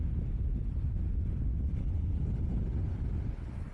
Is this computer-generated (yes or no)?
no